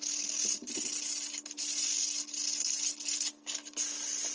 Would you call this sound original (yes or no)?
yes